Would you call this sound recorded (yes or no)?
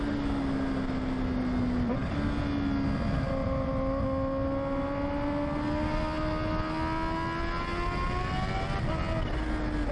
yes